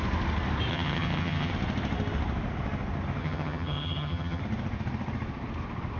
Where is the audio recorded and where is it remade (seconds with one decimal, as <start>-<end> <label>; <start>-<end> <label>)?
0.0-0.7 recorded; 0.7-1.5 remade; 1.5-3.2 recorded; 3.2-4.4 remade; 4.4-6.0 recorded